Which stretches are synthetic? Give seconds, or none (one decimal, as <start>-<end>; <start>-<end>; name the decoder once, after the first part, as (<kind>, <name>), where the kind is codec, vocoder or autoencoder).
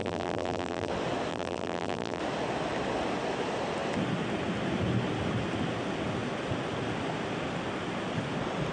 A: 0.0-0.9 (vocoder, BigVGAN v2); 1.3-2.2